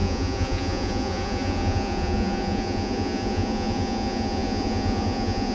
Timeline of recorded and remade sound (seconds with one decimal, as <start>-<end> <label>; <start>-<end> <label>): 0.0-5.5 remade